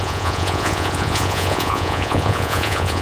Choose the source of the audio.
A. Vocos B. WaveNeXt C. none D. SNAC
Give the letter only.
A